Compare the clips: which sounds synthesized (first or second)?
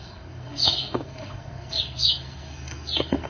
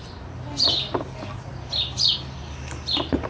first